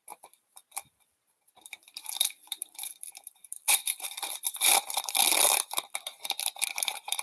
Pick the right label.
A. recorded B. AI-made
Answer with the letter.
B